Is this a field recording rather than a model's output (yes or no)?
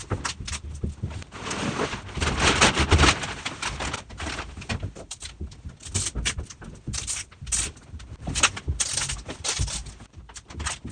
yes